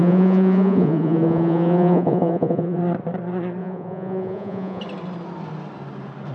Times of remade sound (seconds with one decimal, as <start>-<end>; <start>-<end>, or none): 0.0-2.8; 3.6-4.8